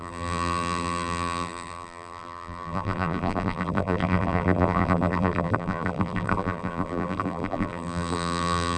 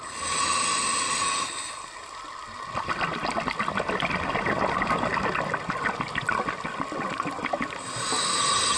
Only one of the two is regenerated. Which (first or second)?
first